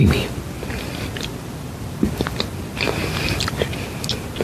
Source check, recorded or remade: recorded